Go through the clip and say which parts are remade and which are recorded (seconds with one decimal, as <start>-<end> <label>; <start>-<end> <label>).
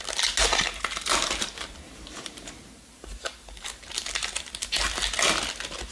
0.0-0.4 recorded; 0.4-3.9 remade; 3.9-5.9 recorded